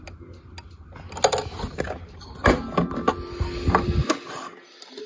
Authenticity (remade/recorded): recorded